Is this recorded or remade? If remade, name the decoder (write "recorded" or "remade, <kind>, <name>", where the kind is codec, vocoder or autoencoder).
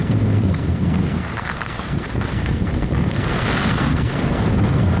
remade, codec, SNAC